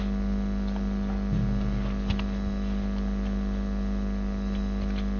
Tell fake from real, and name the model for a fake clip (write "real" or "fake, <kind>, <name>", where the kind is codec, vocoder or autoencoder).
real